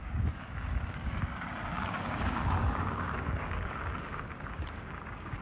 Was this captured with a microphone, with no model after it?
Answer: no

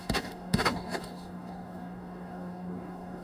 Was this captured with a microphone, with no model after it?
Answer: no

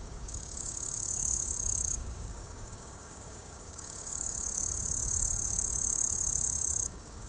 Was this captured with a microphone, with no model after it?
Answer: no